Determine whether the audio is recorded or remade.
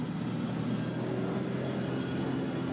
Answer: recorded